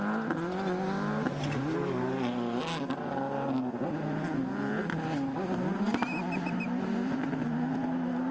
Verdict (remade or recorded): recorded